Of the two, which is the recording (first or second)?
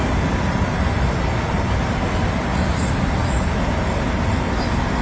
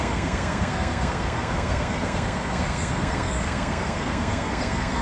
first